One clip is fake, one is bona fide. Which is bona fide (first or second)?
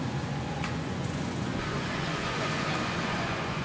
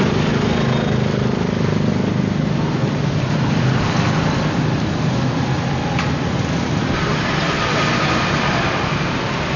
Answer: second